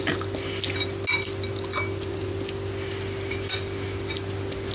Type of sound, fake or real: real